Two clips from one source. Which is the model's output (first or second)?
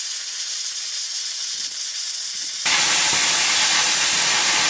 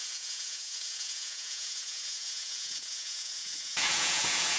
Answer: second